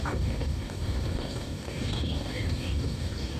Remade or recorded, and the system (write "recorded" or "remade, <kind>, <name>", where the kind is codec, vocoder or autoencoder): remade, codec, DAC